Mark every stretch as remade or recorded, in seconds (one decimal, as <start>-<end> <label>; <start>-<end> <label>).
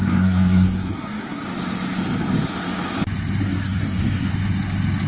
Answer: 0.0-1.4 remade; 1.4-3.4 recorded; 3.4-4.3 remade; 4.3-5.1 recorded